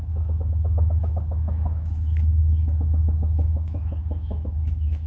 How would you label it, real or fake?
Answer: fake